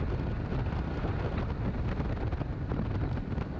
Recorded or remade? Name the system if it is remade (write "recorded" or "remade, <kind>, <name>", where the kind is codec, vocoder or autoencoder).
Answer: recorded